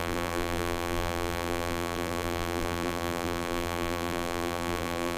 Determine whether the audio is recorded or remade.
remade